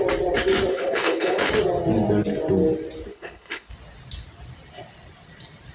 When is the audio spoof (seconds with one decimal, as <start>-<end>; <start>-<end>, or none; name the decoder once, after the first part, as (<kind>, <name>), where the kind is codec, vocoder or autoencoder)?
0.7-1.5 (codec, HILCodec); 3.1-3.7